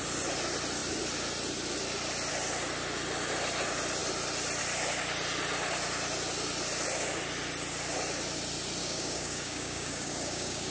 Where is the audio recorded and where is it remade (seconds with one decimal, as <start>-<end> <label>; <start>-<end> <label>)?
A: 0.0-8.8 recorded; 8.8-10.7 remade